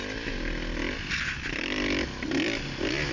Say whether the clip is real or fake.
real